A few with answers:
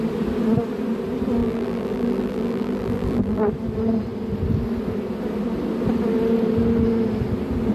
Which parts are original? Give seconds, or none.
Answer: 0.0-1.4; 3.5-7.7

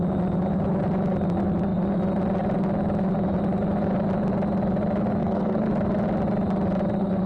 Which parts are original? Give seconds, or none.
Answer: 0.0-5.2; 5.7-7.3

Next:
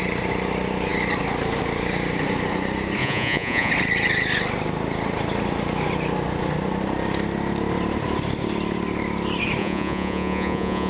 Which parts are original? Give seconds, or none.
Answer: 0.0-3.0; 3.7-9.6